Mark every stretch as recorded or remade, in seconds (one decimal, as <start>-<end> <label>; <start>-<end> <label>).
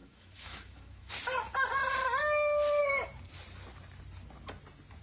0.0-1.1 remade; 1.1-5.0 recorded